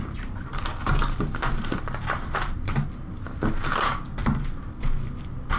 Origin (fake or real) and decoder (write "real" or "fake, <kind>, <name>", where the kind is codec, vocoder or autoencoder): real